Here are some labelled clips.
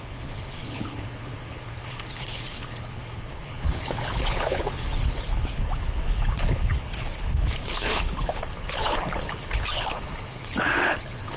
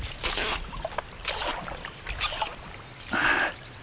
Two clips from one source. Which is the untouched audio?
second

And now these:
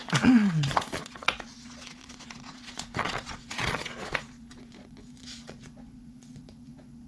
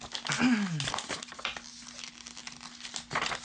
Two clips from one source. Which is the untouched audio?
second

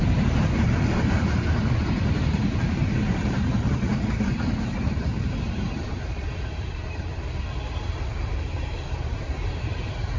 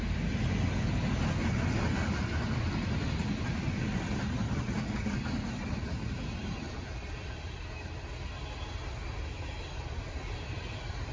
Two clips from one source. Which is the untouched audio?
second